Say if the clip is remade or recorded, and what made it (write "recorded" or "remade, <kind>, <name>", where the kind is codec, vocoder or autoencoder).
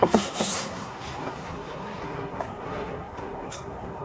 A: remade, codec, SNAC